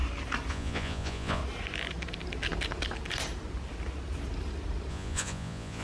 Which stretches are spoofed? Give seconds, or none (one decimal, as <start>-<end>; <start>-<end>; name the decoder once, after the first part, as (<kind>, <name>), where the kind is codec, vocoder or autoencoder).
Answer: 0.5-1.4 (vocoder, Vocos); 4.9-5.8